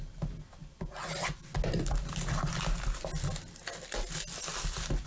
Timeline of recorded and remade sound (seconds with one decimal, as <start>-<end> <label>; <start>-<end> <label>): 0.0-5.1 recorded

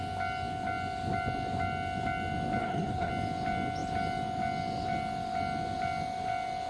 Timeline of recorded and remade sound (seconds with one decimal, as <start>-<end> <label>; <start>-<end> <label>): 0.0-2.6 recorded; 2.6-3.1 remade; 3.1-6.7 recorded